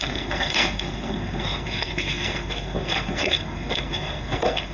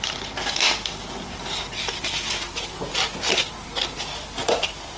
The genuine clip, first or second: second